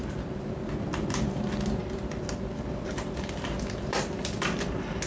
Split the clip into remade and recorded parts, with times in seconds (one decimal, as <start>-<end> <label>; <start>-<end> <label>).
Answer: 0.0-5.1 recorded